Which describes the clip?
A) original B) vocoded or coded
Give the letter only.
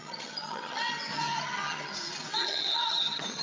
B